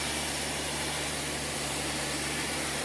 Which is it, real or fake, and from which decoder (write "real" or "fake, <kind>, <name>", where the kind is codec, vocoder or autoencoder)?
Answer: fake, vocoder, BigVGAN v2